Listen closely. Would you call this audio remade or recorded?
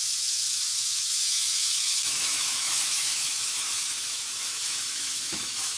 remade